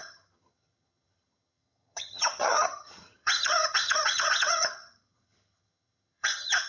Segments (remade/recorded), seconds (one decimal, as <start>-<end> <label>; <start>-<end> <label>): 0.0-6.7 remade